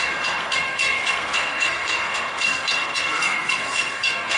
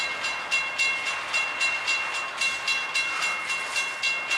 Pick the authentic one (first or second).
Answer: second